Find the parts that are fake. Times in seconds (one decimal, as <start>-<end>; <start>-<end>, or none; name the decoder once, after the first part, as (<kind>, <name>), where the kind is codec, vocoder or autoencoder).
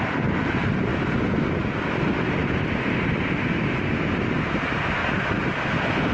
none